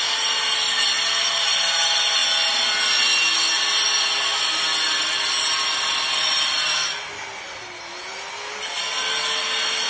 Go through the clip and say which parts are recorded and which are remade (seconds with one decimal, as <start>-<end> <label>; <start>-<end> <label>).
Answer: 0.0-9.9 recorded